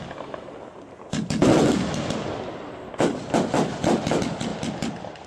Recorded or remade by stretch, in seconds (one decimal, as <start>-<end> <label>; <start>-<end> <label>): 0.0-4.5 recorded; 4.5-5.3 remade